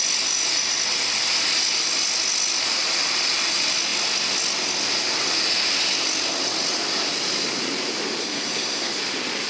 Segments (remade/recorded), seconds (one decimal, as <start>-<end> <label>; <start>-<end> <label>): 0.0-8.2 recorded; 8.2-8.9 remade; 8.9-9.5 recorded